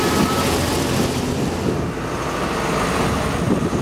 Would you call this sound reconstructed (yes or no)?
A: no